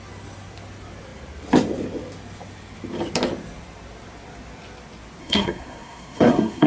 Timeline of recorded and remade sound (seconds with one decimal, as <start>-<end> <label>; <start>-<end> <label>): 0.0-5.2 recorded; 5.2-6.7 remade